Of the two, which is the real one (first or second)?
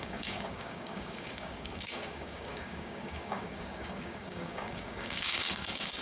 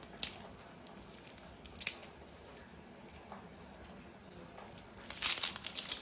second